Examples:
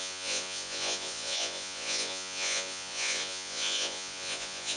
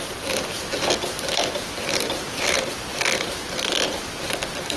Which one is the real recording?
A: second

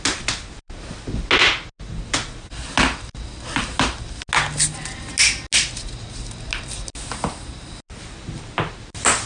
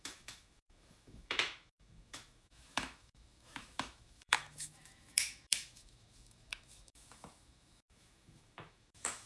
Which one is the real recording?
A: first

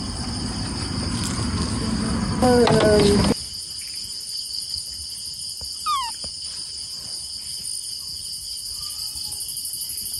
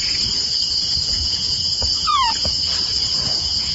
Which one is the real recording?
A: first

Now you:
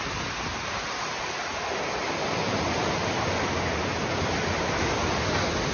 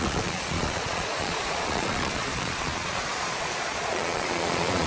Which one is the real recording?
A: first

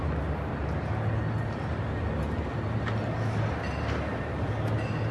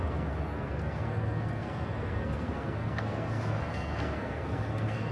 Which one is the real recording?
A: first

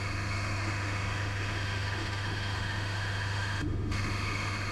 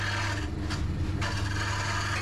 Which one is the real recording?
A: second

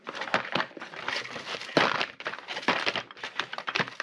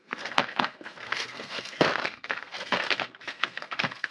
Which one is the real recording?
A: first